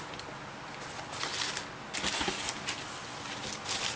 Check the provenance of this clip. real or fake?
real